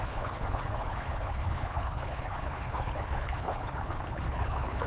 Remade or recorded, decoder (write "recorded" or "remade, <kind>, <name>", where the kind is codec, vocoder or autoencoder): remade, codec, HILCodec